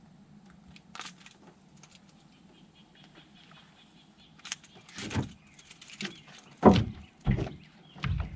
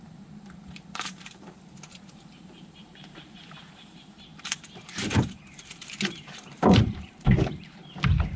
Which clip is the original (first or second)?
first